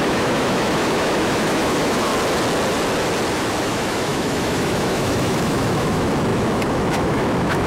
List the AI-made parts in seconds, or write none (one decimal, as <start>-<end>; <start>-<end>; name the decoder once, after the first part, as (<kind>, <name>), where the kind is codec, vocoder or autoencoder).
0.0-2.1 (autoencoder, DAC-VAE); 3.6-7.7